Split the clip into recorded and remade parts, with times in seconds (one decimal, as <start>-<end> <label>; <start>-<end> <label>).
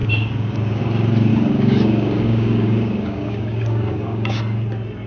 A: 0.0-0.8 remade; 0.8-1.3 recorded; 1.3-4.4 remade; 4.4-5.1 recorded